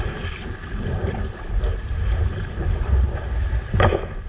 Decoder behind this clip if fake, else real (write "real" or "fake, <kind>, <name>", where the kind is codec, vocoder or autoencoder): fake, vocoder, BigVGAN v2